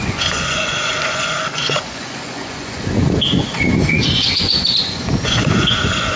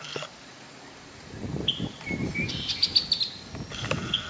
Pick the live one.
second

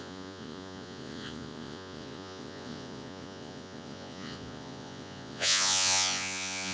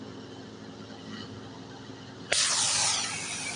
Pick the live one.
second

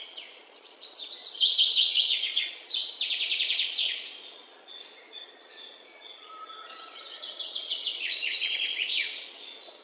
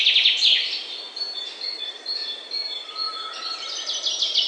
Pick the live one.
second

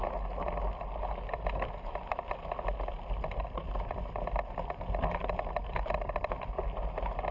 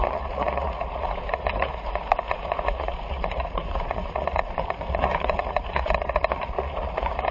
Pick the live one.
first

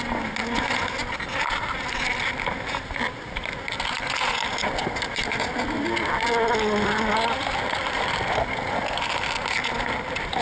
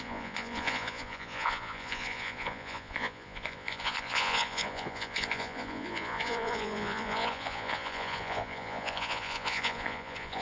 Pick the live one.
first